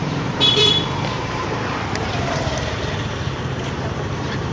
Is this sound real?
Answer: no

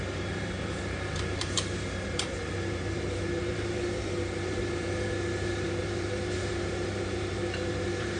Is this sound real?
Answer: no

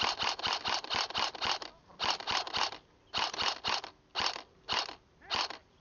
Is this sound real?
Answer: yes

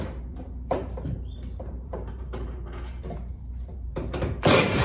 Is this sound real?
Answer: no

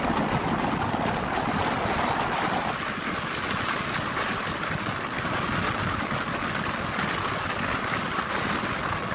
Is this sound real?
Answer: yes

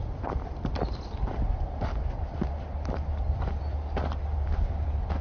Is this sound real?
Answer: no